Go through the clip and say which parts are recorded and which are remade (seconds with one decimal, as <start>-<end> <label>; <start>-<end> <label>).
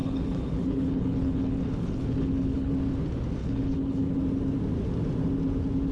0.0-2.7 remade; 2.7-3.4 recorded; 3.4-4.2 remade; 4.2-5.9 recorded